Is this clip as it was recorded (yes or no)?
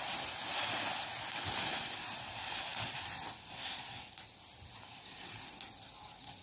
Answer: yes